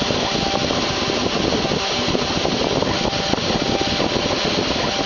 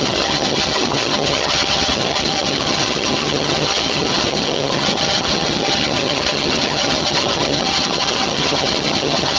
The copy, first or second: second